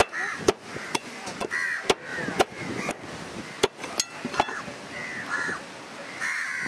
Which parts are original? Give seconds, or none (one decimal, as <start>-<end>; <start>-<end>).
0.0-0.4; 1.5-2.1; 2.9-6.7